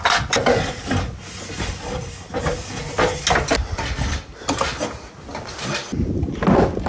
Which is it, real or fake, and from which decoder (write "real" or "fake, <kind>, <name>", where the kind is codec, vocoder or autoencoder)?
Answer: real